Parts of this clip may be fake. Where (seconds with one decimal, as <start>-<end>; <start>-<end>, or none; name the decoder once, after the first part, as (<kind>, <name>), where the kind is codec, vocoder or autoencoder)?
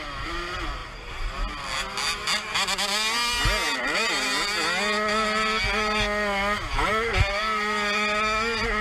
none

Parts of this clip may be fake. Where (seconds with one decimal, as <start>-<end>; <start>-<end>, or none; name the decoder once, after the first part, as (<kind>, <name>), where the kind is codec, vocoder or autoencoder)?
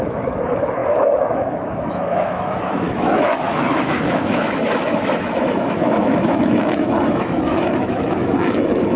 0.0-9.0 (autoencoder, DAC-VAE)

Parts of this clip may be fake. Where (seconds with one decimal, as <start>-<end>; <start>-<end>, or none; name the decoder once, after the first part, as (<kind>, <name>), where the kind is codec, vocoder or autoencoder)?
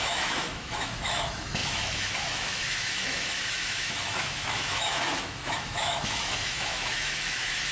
0.0-7.7 (autoencoder, DAC-VAE)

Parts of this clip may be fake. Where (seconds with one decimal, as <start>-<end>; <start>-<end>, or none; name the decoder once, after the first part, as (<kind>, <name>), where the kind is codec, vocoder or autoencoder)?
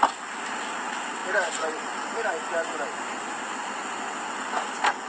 none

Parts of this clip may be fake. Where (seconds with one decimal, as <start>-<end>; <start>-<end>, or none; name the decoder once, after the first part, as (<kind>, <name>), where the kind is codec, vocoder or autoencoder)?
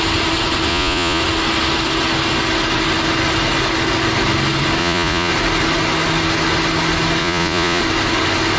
0.7-1.2 (vocoder, Vocos); 4.8-5.3; 7.2-7.8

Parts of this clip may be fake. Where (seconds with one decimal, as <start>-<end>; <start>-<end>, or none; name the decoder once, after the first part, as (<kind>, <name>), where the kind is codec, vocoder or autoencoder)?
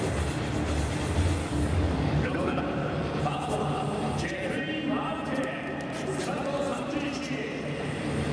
1.4-2.6 (codec, DAC)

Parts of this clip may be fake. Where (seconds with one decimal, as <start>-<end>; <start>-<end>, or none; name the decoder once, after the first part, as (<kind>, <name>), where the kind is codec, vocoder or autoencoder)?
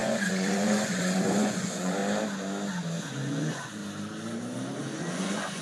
0.0-2.0 (vocoder, Vocos); 3.1-3.8; 4.8-5.6